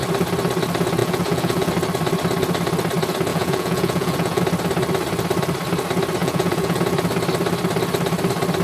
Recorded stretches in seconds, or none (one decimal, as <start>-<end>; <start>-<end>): 0.0-1.0; 1.7-3.3; 4.4-6.2; 6.8-8.6